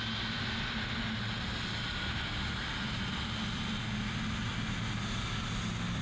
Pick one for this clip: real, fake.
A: real